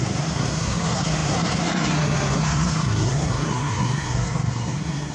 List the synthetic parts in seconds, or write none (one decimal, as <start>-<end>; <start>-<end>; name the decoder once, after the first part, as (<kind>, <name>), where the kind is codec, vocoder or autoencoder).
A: 0.0-5.1 (codec, SNAC)